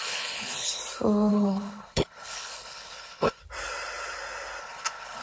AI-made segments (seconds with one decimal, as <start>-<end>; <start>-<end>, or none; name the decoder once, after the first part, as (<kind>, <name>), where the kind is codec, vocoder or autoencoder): 0.0-0.8 (codec, HILCodec); 1.3-3.4; 4.6-5.2